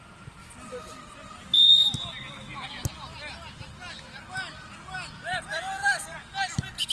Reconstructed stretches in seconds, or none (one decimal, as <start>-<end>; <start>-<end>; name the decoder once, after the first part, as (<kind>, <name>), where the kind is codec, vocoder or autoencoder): none